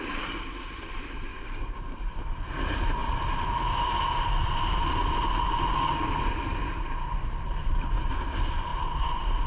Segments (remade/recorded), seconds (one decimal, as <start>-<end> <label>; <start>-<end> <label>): 0.0-1.3 recorded; 1.3-2.1 remade; 2.1-9.5 recorded